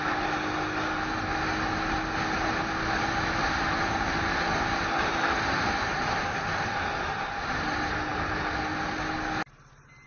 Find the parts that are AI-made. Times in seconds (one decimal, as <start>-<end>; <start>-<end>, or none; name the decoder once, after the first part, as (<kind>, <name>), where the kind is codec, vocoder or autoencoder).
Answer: none